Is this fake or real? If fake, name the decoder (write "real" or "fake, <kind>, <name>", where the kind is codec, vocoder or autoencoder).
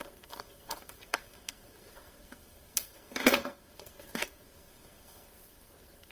fake, codec, SNAC